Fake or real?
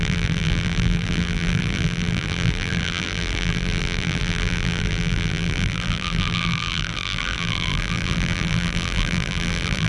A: fake